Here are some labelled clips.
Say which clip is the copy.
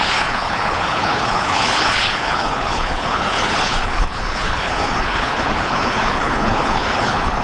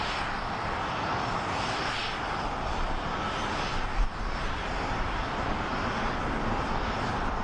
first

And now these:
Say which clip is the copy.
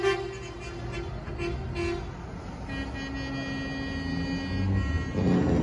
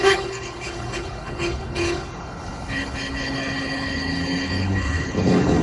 second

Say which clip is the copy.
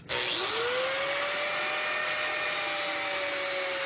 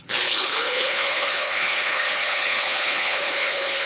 second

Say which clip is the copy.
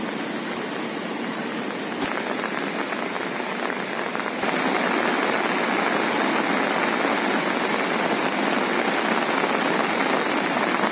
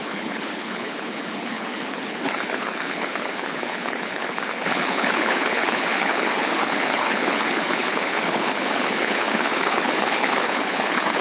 second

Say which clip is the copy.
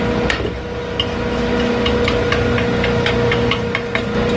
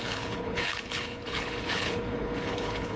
second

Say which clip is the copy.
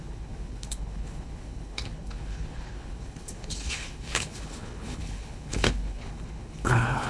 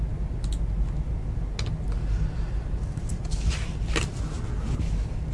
first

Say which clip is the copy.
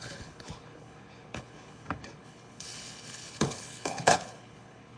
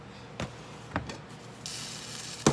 first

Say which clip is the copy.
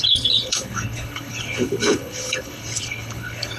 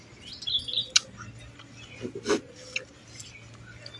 first